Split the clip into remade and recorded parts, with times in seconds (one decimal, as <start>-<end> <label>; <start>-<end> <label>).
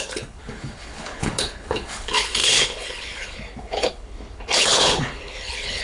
0.0-5.8 remade